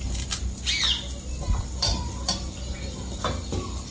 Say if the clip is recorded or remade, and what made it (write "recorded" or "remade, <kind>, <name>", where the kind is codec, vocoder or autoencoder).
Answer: recorded